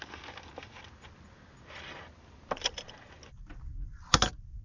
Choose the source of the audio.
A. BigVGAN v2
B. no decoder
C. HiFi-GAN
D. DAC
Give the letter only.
B